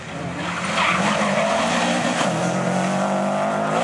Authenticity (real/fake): real